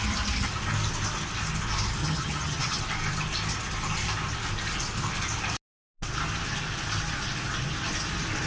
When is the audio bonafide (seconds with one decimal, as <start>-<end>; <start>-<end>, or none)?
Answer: 0.0-2.0; 2.8-8.5